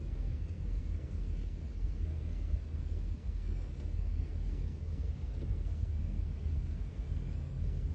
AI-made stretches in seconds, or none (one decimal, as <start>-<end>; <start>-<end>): 0.0-7.9